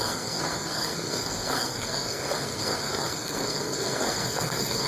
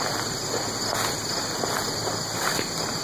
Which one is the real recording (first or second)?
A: second